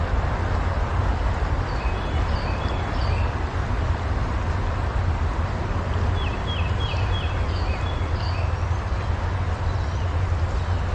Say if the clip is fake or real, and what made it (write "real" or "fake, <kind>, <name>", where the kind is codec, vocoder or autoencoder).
real